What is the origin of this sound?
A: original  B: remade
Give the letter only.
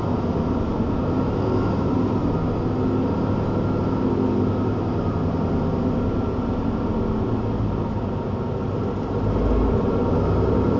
A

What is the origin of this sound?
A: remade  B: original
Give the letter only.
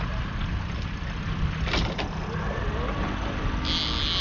B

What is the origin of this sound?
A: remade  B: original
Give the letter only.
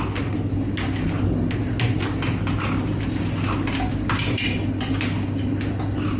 B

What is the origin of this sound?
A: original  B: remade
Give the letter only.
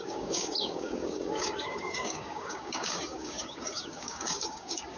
B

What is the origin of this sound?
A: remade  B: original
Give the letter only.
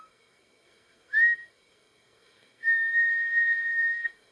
A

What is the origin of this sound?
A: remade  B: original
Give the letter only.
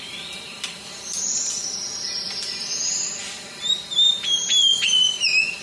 B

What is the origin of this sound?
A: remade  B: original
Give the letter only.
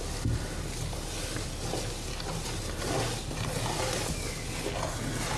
B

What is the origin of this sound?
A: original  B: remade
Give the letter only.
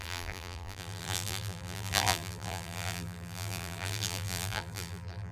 B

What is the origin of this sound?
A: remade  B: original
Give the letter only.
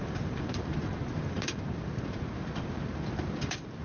A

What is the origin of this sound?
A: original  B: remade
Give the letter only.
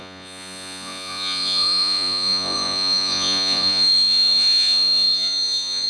B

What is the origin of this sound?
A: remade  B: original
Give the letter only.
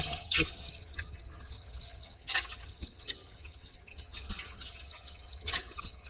A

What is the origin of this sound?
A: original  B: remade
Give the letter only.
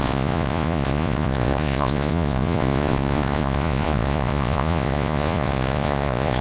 B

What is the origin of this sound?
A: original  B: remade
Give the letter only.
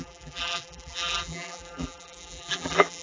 B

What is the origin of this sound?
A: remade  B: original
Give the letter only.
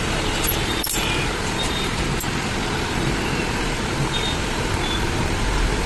A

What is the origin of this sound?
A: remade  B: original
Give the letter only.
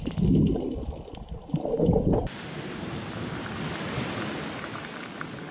B